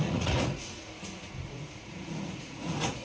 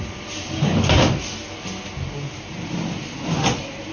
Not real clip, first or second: first